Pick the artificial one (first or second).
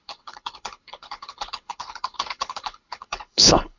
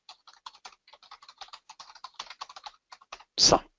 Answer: first